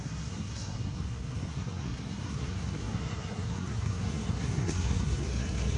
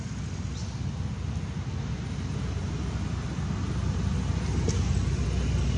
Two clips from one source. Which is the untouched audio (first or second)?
second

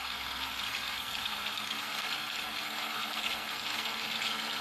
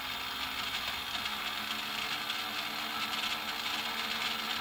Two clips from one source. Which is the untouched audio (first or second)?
second